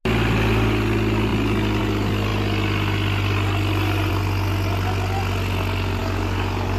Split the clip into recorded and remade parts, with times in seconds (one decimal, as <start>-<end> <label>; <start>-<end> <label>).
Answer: 0.0-6.0 recorded; 6.0-6.8 remade